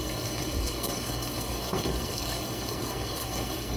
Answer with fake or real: fake